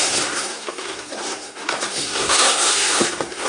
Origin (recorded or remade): remade